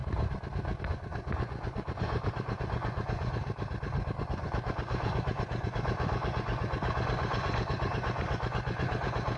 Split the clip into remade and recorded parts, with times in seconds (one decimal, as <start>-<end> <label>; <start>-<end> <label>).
0.0-0.8 recorded; 0.8-3.4 remade; 3.4-4.2 recorded; 4.2-9.4 remade